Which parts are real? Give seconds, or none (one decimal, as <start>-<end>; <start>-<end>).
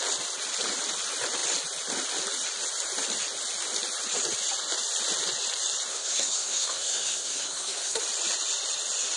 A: 0.0-5.9; 8.0-9.2